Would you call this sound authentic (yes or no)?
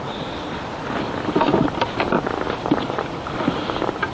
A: no